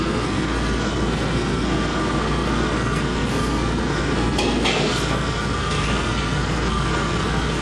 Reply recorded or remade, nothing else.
remade